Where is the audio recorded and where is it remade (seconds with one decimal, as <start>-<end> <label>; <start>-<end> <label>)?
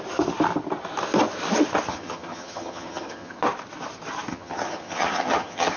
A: 0.0-1.9 recorded; 1.9-3.4 remade; 3.4-4.3 recorded; 4.3-5.8 remade